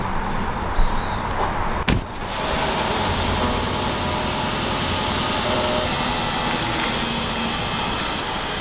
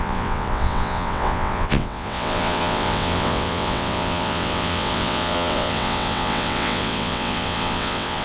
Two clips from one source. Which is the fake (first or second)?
second